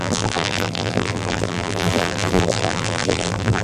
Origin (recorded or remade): remade